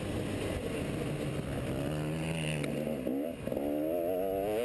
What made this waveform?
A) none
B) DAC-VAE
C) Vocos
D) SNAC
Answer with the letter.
A